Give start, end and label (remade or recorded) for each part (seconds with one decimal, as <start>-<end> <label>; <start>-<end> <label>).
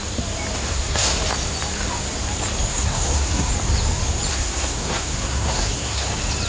0.0-0.7 recorded; 0.7-1.2 remade; 1.2-2.7 recorded; 2.7-3.5 remade; 3.5-4.3 recorded; 4.3-6.1 remade; 6.1-6.5 recorded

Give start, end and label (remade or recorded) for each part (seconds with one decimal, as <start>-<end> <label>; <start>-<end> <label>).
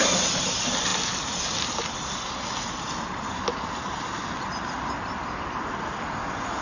0.0-6.6 recorded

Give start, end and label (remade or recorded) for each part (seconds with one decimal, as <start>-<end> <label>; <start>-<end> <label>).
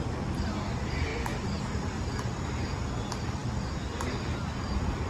0.0-5.1 recorded